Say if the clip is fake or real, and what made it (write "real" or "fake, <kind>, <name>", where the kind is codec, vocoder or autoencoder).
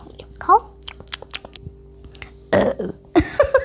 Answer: real